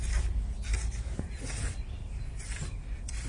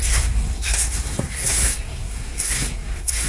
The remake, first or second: second